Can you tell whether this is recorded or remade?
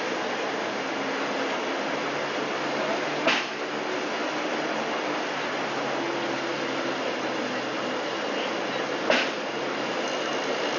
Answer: recorded